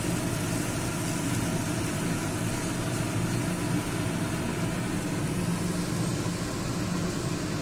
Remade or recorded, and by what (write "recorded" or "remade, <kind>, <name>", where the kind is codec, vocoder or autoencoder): recorded